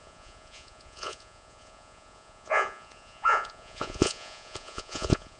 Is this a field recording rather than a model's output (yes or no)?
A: no